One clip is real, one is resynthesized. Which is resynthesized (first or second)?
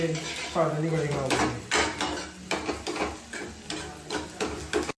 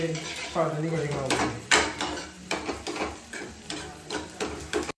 second